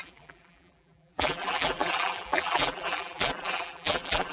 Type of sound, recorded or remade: remade